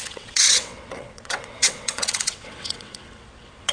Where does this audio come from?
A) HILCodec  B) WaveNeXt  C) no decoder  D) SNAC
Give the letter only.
B